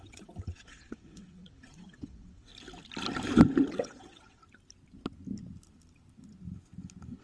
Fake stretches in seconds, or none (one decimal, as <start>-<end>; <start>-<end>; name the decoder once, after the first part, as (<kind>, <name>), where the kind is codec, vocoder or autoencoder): 0.0-2.5 (vocoder, WaveNeXt); 3.7-4.4